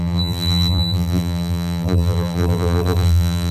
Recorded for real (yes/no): no